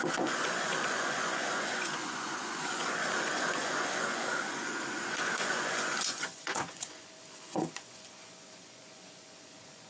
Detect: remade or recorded remade